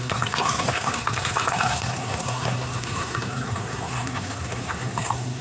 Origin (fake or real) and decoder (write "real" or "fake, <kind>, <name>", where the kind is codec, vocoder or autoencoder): fake, codec, SNAC